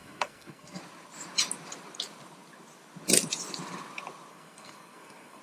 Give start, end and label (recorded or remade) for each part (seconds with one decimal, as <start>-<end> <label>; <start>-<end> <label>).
0.0-0.8 remade; 0.8-4.3 recorded; 4.3-5.4 remade